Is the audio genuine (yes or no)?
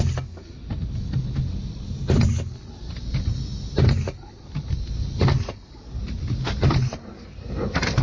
yes